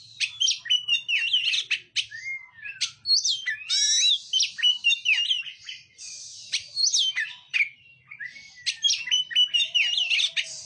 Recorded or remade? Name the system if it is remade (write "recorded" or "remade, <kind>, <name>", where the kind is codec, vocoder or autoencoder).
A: recorded